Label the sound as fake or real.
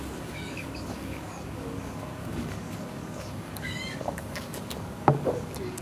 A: fake